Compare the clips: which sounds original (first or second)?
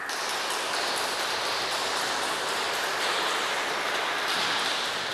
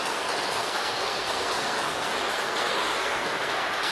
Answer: first